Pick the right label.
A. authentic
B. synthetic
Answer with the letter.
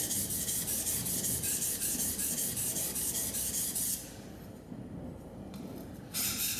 B